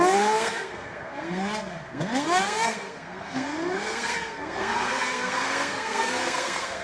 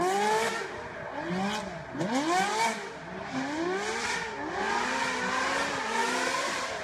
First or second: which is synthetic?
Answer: first